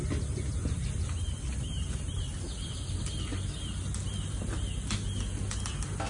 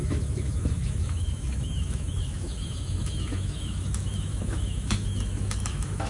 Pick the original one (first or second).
first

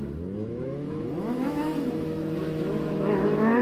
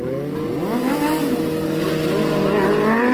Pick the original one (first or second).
second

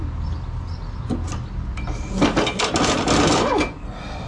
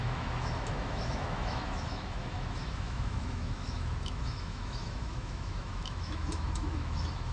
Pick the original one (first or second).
first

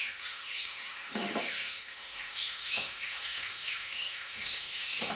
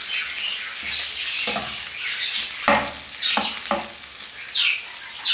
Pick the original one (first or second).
second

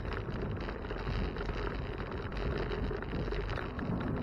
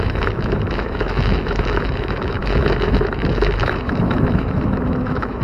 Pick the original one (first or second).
first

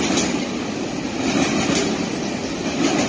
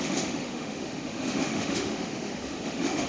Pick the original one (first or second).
first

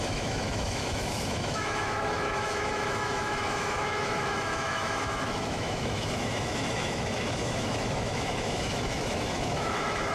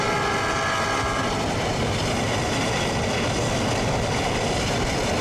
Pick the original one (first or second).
second